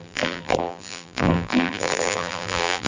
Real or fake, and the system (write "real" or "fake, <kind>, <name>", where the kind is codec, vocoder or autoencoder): fake, vocoder, BigVGAN v2